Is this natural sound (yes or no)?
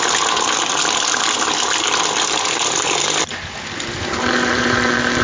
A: no